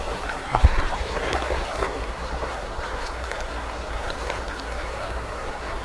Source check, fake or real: fake